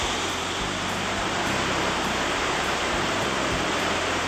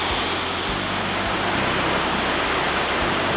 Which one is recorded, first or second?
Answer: second